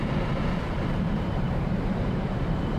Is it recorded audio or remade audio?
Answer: remade